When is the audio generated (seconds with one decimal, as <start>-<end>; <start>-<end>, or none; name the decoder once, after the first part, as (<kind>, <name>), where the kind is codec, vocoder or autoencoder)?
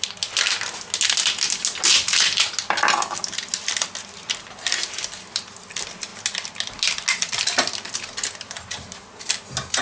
none